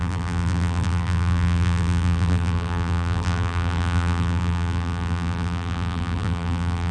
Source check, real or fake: fake